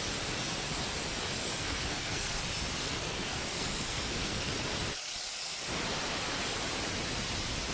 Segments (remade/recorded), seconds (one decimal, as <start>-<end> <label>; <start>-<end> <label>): 0.0-1.4 recorded; 1.4-2.4 remade; 2.4-2.8 recorded; 2.8-4.5 remade; 4.5-7.7 recorded